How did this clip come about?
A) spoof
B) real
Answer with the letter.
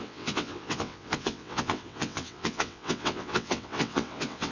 A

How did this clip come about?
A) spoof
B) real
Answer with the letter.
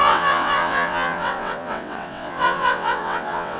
A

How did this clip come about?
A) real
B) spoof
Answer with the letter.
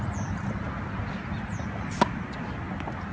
A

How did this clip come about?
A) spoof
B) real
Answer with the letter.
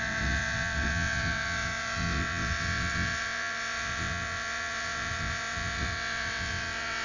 A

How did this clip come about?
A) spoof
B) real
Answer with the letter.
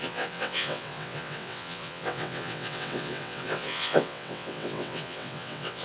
A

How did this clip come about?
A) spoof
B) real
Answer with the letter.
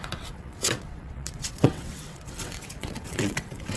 A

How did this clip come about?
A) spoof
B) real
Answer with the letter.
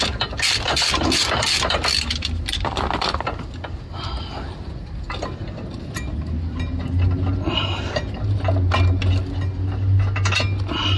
B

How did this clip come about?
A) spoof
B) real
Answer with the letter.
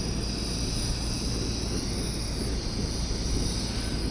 B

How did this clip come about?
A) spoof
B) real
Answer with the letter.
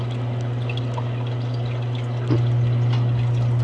B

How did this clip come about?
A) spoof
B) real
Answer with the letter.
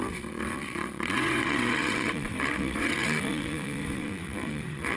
A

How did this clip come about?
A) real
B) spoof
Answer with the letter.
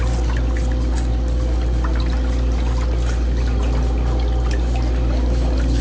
A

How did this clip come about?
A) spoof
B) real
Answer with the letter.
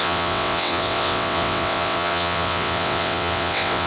A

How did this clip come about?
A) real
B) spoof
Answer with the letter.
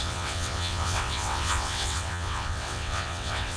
B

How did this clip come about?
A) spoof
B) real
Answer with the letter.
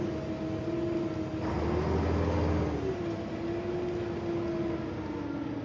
B